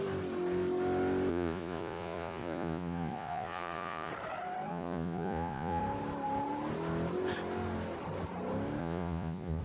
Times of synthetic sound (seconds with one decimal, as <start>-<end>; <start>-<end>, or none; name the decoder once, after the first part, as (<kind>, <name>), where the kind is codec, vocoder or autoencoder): 1.3-4.1 (vocoder, Vocos); 4.7-5.8; 8.8-9.6